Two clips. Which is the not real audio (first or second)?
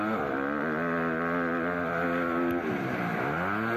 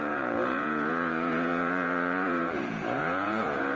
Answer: second